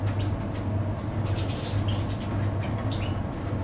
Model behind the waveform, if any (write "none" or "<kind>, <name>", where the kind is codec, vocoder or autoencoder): none